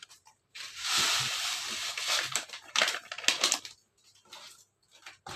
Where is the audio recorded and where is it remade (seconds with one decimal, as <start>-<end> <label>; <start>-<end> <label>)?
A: 0.0-3.2 remade; 3.2-5.4 recorded